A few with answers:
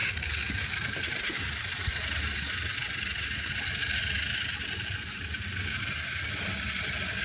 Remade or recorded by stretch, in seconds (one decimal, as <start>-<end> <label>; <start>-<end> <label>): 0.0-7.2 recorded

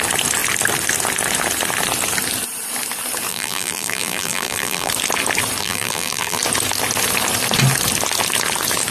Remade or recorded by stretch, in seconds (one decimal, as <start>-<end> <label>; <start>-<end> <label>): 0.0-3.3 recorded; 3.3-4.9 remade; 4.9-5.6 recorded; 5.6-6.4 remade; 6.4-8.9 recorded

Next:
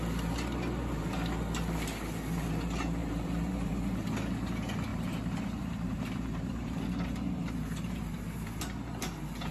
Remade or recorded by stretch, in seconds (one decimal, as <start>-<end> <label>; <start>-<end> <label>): 0.0-3.0 recorded; 3.0-3.8 remade; 3.8-4.9 recorded; 4.9-8.6 remade; 8.6-9.5 recorded

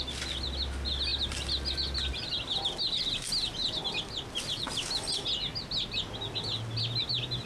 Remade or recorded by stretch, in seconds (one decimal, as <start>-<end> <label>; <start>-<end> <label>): 0.0-7.5 recorded